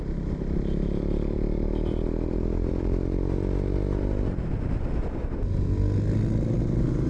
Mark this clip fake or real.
real